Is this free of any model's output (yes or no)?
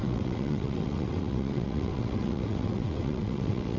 no